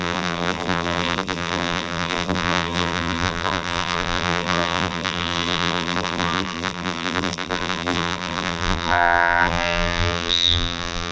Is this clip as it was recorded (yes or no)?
no